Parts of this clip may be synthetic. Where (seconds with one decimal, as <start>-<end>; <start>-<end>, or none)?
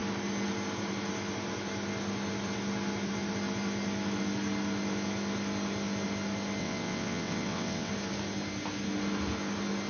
6.6-7.9